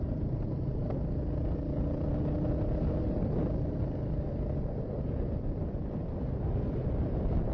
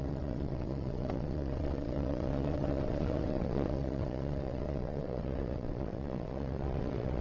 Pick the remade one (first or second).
second